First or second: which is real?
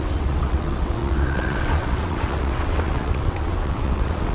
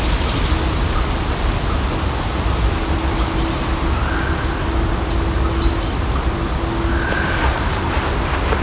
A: second